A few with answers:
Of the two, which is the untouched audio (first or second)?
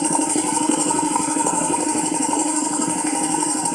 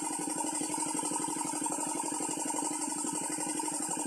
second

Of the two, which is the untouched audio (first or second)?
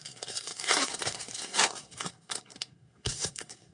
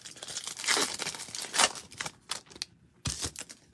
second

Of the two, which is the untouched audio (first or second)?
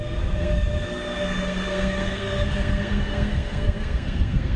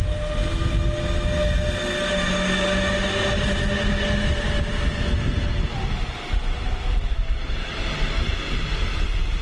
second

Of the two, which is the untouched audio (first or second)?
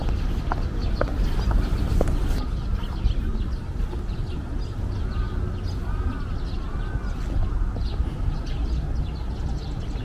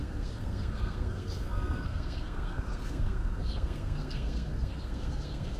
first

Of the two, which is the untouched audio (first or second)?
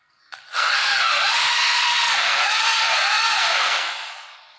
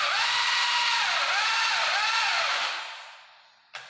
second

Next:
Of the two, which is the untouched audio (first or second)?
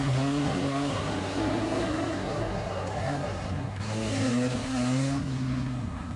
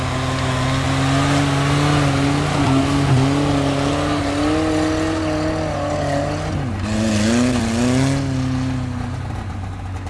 second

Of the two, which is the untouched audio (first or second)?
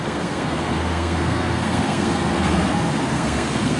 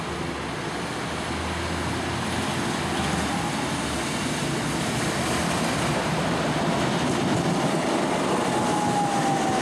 second